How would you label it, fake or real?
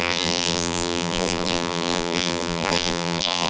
fake